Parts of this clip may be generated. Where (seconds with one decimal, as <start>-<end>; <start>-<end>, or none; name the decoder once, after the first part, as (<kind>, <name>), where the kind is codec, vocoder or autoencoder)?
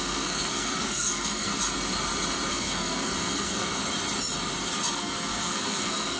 0.0-1.5 (codec, SNAC); 2.5-3.8; 4.9-6.2